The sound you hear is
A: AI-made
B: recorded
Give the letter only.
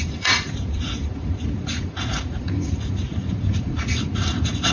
A